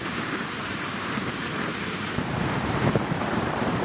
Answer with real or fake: fake